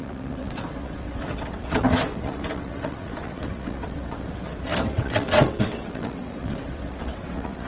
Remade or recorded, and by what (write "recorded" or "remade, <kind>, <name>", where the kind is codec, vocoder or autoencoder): remade, vocoder, WaveNeXt